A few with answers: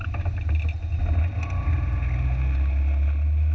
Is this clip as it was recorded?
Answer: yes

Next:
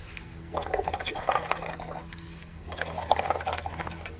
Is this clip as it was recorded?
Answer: no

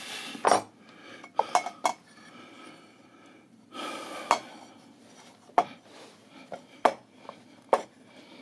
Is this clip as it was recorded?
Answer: yes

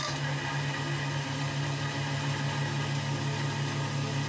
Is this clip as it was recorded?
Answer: yes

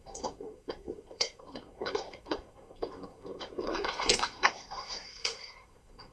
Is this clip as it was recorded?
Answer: no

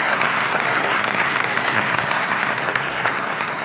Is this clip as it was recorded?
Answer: no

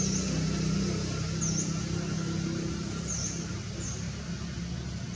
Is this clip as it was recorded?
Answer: yes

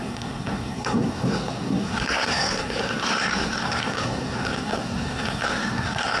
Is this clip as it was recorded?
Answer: no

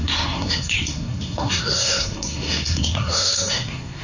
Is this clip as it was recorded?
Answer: no